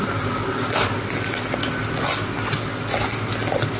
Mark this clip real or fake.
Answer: real